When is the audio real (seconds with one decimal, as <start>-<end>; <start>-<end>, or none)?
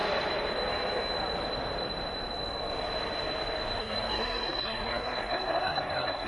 0.0-3.8